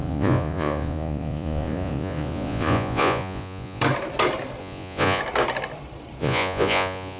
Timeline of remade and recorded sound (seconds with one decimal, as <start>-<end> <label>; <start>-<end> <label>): 0.0-3.8 remade; 3.8-4.6 recorded; 4.6-5.2 remade; 5.2-6.2 recorded; 6.2-7.2 remade